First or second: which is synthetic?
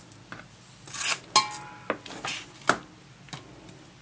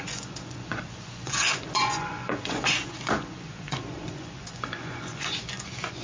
second